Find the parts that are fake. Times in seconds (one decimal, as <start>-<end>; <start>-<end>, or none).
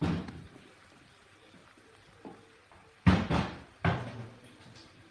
none